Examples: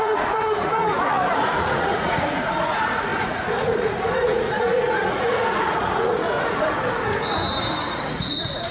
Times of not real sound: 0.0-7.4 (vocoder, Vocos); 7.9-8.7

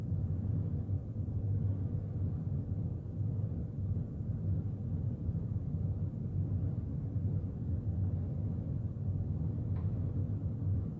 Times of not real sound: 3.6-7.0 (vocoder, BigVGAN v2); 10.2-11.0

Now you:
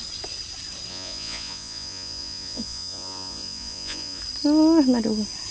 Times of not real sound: 0.9-4.2 (vocoder, Vocos)

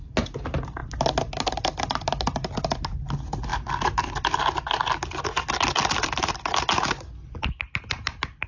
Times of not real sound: none

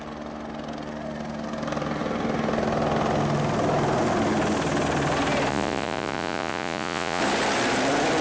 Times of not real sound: 5.5-7.2 (vocoder, Vocos)

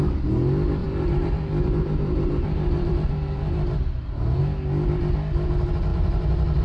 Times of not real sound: 0.8-4.4 (vocoder, BigVGAN v2); 5.9-6.6

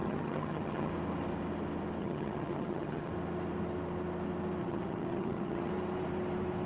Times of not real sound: 0.0-0.9 (vocoder, HiFi-GAN); 2.0-3.1; 4.6-5.7